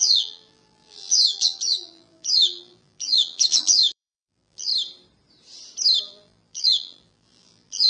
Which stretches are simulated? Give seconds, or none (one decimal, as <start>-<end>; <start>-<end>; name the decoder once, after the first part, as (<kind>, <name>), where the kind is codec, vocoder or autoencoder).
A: 0.0-4.7 (vocoder, BigVGAN v2); 6.0-7.9